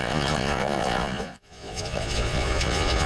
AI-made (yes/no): yes